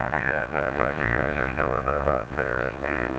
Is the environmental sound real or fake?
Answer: fake